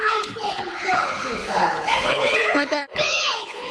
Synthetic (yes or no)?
yes